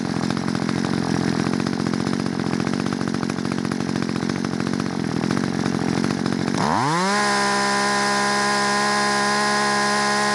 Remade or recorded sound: recorded